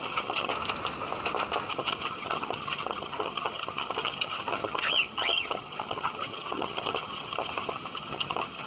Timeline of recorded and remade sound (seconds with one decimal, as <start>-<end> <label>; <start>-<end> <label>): 0.0-0.5 remade; 0.5-1.7 recorded; 1.7-8.7 remade